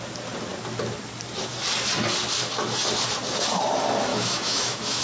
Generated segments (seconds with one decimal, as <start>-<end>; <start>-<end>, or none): 4.1-5.0

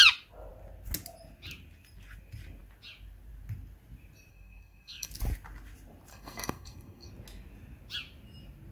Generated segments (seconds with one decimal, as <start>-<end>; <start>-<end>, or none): 4.3-5.1; 6.1-7.1